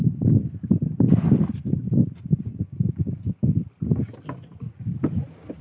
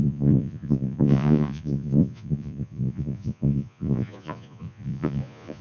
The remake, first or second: second